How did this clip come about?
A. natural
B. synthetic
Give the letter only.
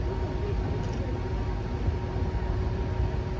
A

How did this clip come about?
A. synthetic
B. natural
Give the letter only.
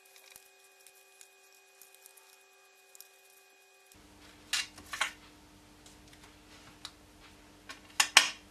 B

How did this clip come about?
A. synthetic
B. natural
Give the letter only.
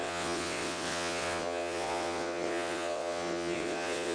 A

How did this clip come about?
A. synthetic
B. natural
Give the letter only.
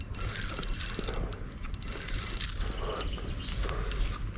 B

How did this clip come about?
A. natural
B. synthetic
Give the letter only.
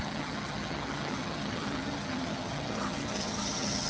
B